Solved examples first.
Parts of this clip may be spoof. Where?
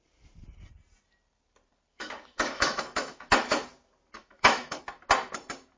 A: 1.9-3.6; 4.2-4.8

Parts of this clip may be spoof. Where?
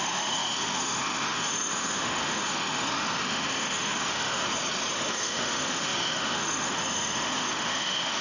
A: 0.0-4.4; 4.9-8.2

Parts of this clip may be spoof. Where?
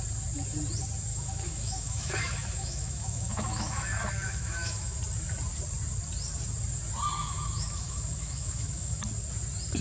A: 1.1-5.0; 7.2-9.0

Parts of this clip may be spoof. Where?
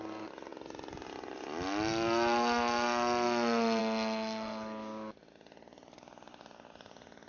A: none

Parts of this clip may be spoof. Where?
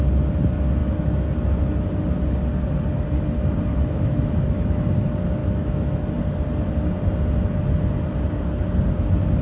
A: 3.7-4.9; 5.4-6.0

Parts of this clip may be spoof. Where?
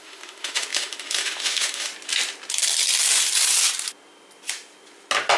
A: 0.0-1.9